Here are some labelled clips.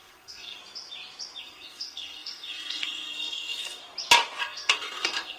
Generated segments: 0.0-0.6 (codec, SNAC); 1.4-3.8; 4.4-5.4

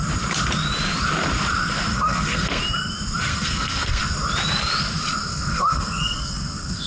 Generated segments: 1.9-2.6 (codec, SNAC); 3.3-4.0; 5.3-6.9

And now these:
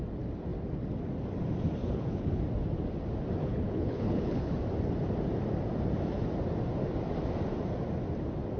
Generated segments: 1.8-2.4 (codec, HILCodec); 3.4-4.5

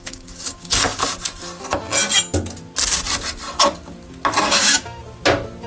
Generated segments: 0.0-1.0 (codec, DAC); 4.4-5.0